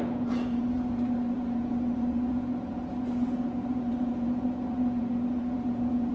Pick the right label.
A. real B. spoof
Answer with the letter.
B